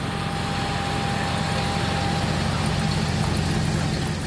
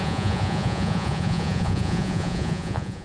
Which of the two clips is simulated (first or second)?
second